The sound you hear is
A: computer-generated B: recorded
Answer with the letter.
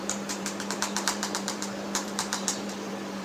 A